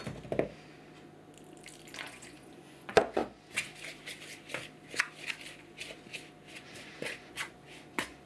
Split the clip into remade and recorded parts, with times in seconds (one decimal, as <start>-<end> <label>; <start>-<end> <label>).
0.0-2.0 recorded; 2.0-3.2 remade; 3.2-6.5 recorded; 6.5-8.3 remade